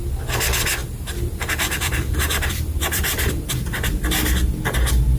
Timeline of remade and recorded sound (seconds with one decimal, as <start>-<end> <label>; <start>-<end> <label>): 0.0-0.8 recorded; 0.8-3.9 remade; 3.9-5.2 recorded